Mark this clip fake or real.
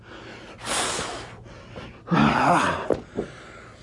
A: real